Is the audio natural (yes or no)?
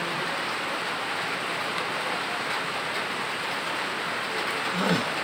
yes